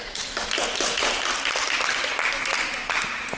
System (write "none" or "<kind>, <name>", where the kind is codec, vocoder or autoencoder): none